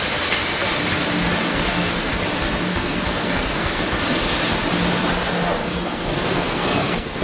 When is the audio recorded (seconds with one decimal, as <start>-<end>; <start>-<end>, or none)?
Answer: 0.0-1.5; 2.1-2.7; 3.8-5.6